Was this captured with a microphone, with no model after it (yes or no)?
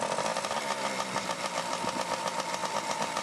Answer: yes